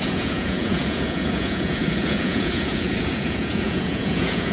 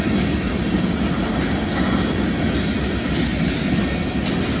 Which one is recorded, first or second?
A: second